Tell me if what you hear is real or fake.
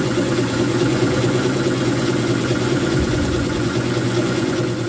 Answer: fake